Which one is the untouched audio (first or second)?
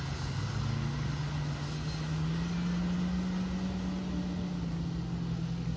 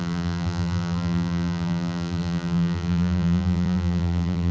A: first